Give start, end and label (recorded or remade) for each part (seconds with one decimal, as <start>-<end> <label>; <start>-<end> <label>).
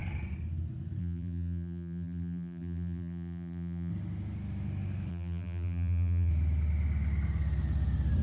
0.0-1.0 recorded; 1.0-3.9 remade; 3.9-5.1 recorded; 5.1-6.3 remade; 6.3-8.2 recorded